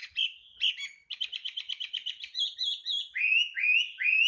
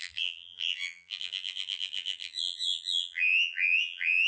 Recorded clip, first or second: first